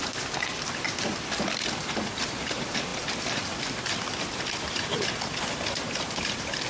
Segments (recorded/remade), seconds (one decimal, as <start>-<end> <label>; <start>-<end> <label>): 0.0-2.9 recorded; 2.9-3.6 remade; 3.6-6.7 recorded